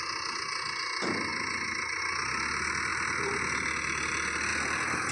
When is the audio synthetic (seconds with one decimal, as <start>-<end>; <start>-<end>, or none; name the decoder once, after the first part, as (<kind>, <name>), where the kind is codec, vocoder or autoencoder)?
none